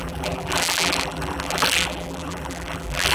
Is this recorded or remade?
remade